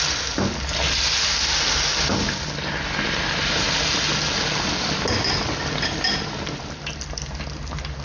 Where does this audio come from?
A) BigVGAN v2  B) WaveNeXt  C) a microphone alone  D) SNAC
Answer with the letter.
C